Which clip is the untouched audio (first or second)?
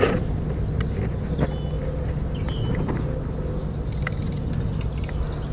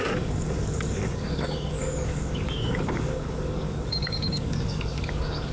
first